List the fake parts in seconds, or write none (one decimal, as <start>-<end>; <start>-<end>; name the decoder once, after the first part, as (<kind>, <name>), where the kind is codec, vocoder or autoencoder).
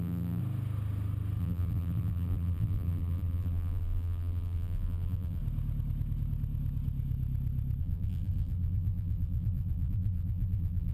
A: 0.0-0.4 (vocoder, BigVGAN v2); 1.4-5.4; 7.8-10.9